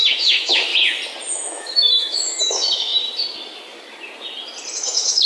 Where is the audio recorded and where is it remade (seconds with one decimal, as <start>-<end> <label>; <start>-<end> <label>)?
0.0-0.7 remade; 0.7-1.3 recorded; 1.3-2.9 remade; 2.9-4.7 recorded; 4.7-5.3 remade